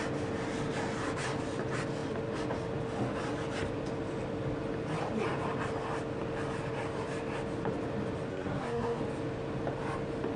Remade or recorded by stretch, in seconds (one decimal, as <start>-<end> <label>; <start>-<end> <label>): 0.0-8.3 recorded; 8.3-9.0 remade; 9.0-10.4 recorded